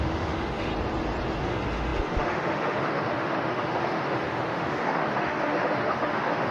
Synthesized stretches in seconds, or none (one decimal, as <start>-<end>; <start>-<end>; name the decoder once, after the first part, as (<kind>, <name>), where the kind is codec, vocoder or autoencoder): 0.0-0.7 (autoencoder, DAC-VAE); 1.4-6.5